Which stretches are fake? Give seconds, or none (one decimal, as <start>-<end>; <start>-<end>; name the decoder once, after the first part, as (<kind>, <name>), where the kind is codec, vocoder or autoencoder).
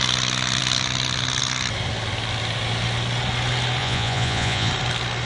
3.8-4.7 (vocoder, Vocos)